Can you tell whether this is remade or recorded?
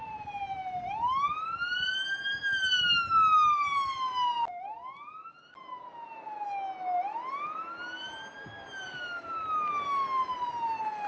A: recorded